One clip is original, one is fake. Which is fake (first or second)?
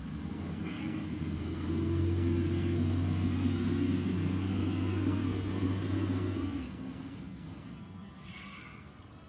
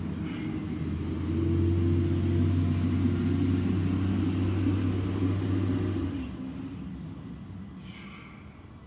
first